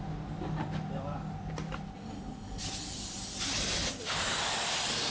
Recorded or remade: recorded